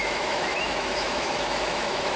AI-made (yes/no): yes